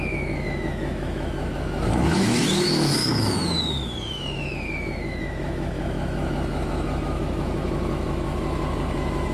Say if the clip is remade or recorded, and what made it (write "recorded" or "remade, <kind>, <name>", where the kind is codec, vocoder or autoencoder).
remade, autoencoder, DAC-VAE